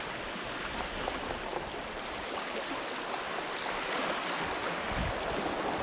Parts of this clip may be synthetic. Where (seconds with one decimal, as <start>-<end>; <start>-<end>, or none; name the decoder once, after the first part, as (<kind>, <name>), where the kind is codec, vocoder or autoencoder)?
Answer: none